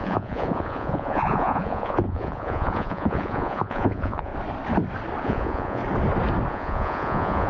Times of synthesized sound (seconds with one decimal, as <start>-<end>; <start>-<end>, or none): 0.0-4.3; 5.2-5.8; 6.5-7.5